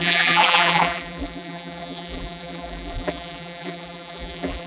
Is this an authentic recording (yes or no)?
no